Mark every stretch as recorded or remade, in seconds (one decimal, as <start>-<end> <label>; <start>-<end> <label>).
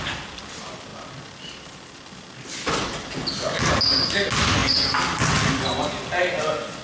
0.0-6.8 recorded